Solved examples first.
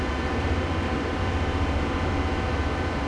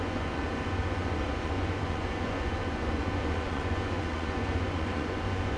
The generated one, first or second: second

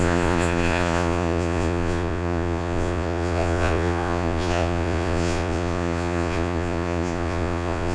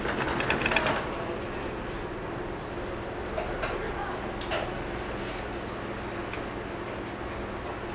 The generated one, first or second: first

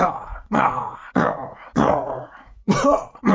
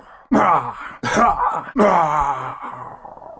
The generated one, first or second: first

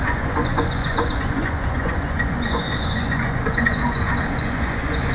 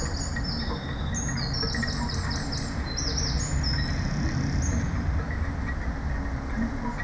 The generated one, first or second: first